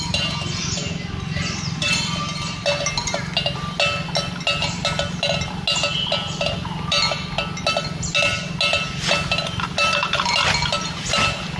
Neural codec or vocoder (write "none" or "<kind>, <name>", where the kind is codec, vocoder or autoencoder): none